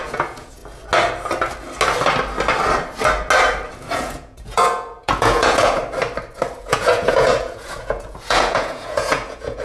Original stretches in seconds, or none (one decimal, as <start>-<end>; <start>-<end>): 0.6-3.9; 5.8-6.6